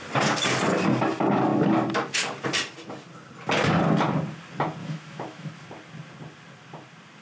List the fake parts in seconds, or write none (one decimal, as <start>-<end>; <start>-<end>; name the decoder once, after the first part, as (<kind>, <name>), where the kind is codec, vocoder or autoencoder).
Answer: 4.8-5.5 (autoencoder, DAC-VAE)